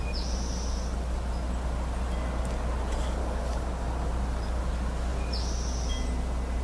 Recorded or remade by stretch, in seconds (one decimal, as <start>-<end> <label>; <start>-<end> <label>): 0.0-3.2 recorded; 3.2-4.1 remade; 4.1-6.6 recorded